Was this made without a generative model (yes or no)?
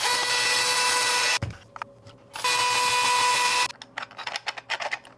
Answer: yes